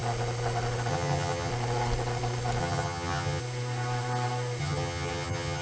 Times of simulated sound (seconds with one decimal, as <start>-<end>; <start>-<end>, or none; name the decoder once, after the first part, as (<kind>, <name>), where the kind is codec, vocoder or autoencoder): 0.9-1.5 (vocoder, HiFi-GAN); 2.6-3.4; 4.6-5.6